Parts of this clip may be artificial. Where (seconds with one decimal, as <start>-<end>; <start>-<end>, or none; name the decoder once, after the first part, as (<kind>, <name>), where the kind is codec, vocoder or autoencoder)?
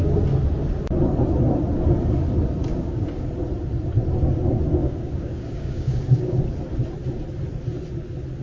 2.7-3.3 (codec, DAC); 4.8-6.4